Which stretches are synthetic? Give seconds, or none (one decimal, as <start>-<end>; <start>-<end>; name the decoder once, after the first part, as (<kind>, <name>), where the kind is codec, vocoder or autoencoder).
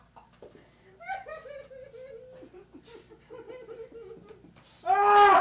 none